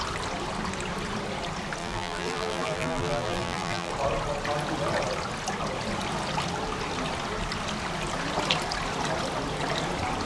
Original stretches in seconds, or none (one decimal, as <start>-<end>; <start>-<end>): 0.0-1.8; 3.9-10.3